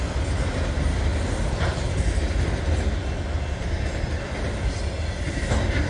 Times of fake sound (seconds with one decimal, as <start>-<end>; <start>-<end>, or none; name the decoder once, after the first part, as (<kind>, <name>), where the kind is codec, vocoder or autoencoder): none